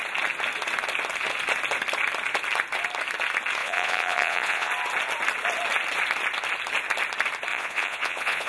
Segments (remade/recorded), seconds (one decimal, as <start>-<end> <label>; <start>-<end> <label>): 0.0-3.6 recorded; 3.6-4.7 remade; 4.7-7.5 recorded; 7.5-8.5 remade